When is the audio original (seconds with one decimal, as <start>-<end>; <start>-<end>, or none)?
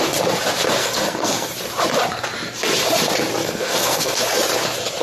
0.0-0.8; 1.5-3.4; 4.2-5.0